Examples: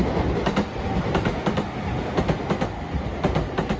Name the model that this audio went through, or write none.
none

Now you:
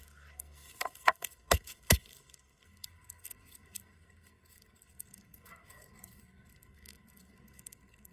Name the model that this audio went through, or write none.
codec, SNAC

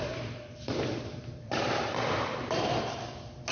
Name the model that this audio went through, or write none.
vocoder, BigVGAN v2